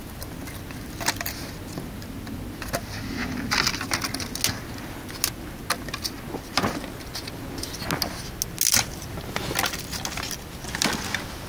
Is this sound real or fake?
real